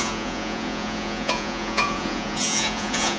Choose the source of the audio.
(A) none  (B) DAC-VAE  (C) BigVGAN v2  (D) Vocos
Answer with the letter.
D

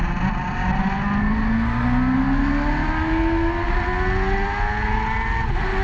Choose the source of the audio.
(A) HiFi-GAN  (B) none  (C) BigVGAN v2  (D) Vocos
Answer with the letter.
B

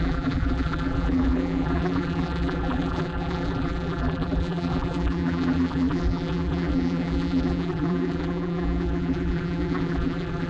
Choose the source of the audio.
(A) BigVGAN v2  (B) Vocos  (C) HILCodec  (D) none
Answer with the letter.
A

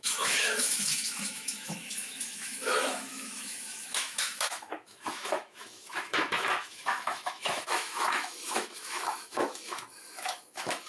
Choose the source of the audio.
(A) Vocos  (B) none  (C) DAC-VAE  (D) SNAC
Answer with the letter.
C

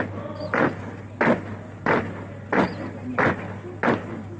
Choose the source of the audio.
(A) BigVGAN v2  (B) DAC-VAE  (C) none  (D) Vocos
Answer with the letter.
C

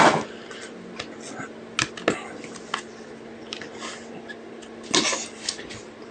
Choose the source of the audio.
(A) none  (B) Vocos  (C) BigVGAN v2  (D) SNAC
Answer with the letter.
A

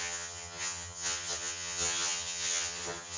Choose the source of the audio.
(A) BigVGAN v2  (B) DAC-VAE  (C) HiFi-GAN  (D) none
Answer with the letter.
C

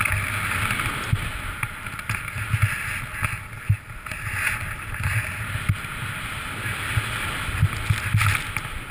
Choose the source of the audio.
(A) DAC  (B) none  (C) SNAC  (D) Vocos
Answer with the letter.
B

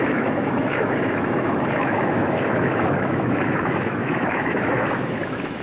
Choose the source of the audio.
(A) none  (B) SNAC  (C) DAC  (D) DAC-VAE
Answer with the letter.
D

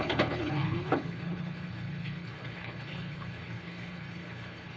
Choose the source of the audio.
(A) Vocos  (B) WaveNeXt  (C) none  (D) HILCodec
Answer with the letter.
D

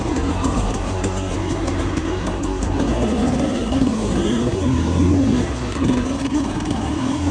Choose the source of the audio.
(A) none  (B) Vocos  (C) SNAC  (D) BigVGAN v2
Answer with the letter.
C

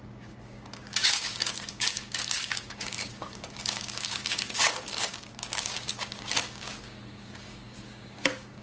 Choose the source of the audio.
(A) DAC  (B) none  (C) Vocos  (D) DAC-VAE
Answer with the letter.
A